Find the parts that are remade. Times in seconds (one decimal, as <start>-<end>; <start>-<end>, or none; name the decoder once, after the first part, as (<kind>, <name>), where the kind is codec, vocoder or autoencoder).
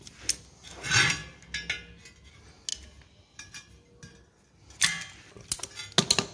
none